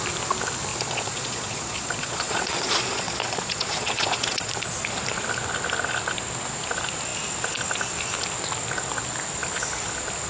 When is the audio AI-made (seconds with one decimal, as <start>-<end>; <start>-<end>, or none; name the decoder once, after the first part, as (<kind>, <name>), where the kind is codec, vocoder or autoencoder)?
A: 0.7-4.5 (vocoder, Vocos)